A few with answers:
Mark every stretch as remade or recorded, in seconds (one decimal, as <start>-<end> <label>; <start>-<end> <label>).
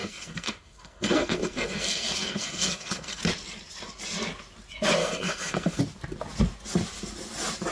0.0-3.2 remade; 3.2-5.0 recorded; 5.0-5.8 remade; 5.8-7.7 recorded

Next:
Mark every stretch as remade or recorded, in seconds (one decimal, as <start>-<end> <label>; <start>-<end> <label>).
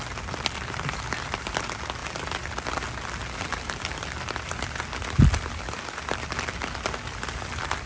0.0-7.9 recorded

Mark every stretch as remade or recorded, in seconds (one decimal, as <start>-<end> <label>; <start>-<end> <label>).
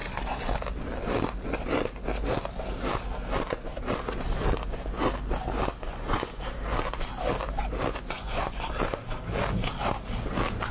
0.0-5.9 recorded; 5.9-6.4 remade; 6.4-7.9 recorded; 7.9-8.7 remade; 8.7-10.7 recorded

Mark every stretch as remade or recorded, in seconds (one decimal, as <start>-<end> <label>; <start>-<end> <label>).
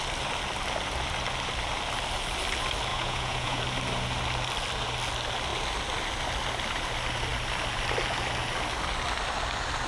0.0-2.9 recorded; 2.9-3.6 remade; 3.6-9.9 recorded